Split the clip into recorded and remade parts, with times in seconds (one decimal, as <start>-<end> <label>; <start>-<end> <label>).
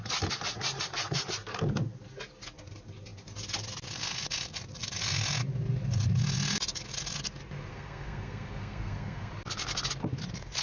0.0-7.7 recorded; 7.7-9.3 remade; 9.3-10.6 recorded